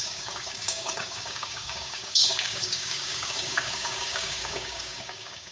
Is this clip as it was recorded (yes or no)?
no